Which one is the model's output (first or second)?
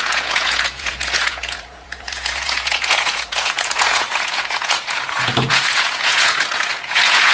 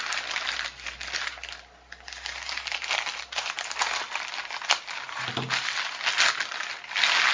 first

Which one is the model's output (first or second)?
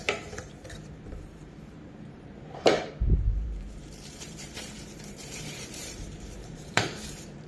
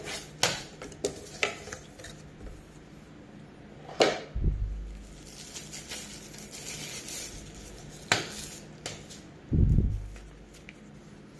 first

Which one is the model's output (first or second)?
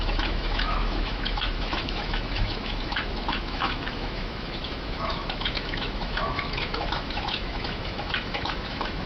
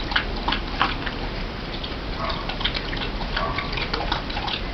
first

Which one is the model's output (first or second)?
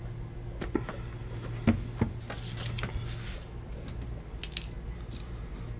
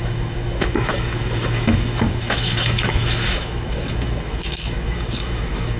second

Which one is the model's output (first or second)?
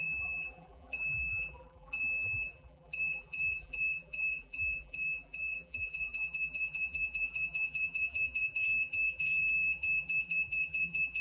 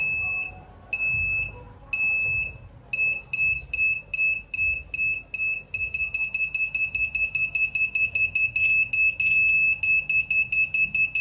first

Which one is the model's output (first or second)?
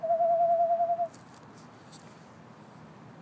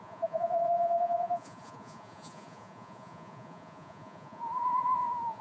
second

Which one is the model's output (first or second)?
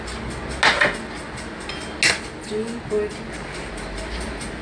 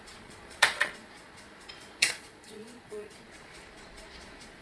second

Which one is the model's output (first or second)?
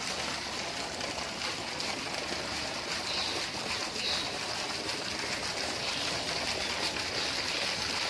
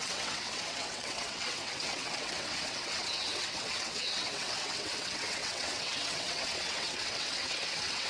second